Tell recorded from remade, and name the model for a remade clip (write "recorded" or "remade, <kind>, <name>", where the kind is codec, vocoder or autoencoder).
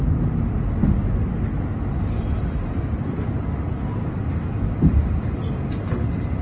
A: recorded